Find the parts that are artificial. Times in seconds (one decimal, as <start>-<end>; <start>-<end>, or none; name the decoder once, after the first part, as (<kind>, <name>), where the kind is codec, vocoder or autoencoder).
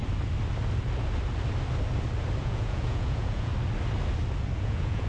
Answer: 2.4-3.5 (vocoder, Vocos); 4.6-5.1